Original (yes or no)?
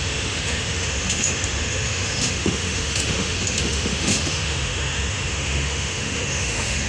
no